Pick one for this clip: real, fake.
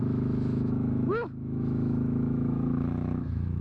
fake